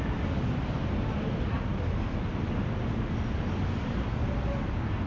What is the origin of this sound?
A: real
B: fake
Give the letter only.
A